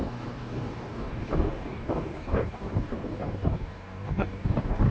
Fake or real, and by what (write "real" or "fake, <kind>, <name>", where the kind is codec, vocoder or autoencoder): fake, codec, DAC